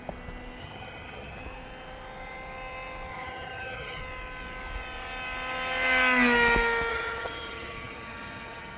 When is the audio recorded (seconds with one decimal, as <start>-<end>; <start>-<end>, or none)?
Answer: 0.0-0.6; 1.4-3.1; 4.0-6.9